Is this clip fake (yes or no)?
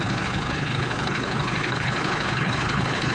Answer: yes